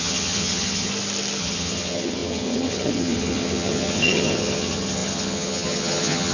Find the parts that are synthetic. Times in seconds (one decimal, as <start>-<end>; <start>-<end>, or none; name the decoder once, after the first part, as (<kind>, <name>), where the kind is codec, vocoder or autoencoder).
0.0-0.9 (vocoder, HiFi-GAN); 1.4-6.3